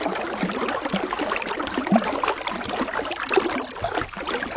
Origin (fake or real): real